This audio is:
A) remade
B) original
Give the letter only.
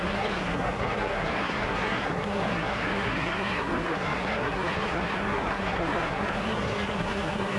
A